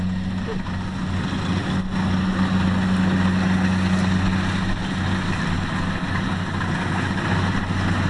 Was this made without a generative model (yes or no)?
yes